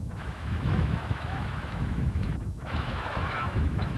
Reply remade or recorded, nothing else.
remade